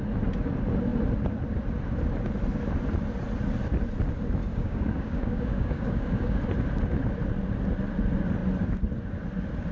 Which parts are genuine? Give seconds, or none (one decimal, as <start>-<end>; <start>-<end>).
0.0-4.5; 6.4-9.7